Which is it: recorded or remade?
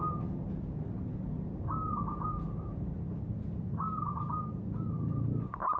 recorded